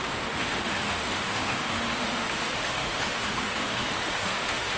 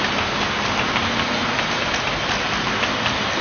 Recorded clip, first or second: second